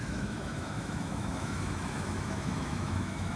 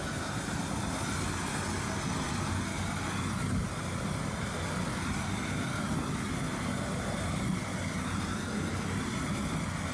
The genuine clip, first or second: second